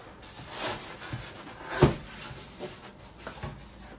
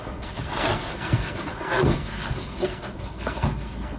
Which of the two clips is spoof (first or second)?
second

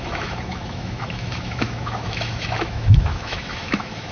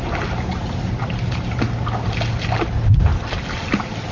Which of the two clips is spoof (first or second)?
first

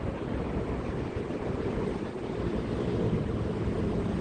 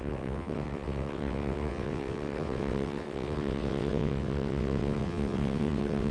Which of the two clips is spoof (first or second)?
second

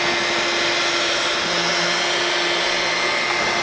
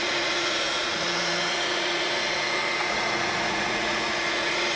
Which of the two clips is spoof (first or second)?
second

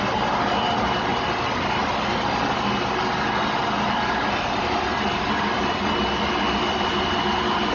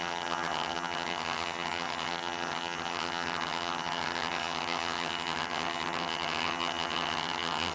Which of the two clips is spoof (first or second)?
second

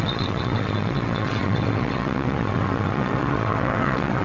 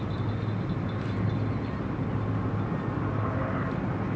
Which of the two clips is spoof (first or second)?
first